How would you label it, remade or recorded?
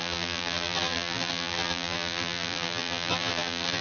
remade